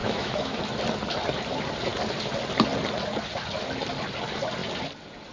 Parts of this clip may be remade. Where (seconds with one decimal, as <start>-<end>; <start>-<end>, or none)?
0.0-0.6